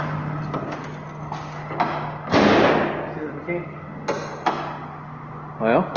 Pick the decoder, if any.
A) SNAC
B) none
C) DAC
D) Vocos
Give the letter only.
B